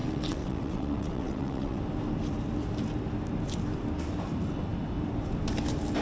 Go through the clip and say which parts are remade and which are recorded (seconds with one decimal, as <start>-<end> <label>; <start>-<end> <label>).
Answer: 0.0-1.8 remade; 1.8-6.0 recorded